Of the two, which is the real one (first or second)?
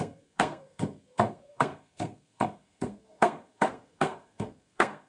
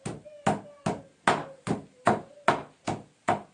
second